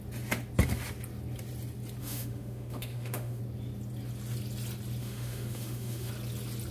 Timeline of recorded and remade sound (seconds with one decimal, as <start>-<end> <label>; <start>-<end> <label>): 0.0-2.0 recorded; 2.0-3.4 remade; 3.4-5.0 recorded; 5.0-6.1 remade; 6.1-6.7 recorded